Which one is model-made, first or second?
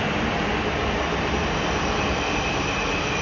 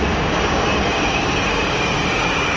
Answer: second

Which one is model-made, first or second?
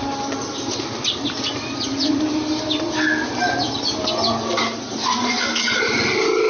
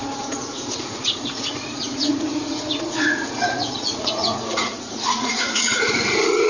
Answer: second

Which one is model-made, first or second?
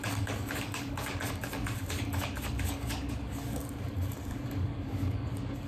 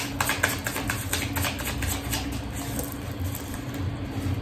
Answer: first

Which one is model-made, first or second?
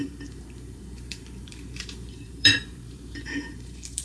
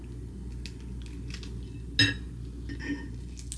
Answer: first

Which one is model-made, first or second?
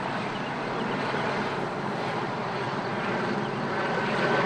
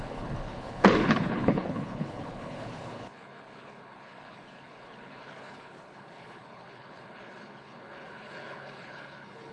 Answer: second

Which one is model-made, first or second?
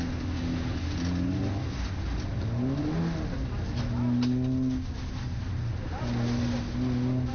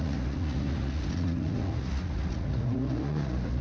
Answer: second